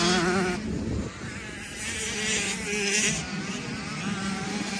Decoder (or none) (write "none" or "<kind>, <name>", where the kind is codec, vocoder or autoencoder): none